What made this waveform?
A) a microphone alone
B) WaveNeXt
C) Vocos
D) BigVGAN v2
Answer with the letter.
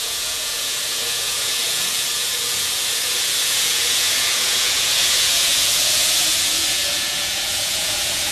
C